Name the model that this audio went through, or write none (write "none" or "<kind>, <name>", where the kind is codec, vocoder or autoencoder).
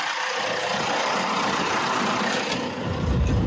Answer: vocoder, BigVGAN v2